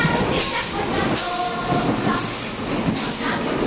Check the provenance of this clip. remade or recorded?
recorded